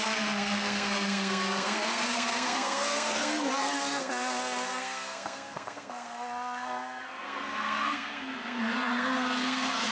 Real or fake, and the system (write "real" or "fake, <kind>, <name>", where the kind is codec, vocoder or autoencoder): fake, codec, SNAC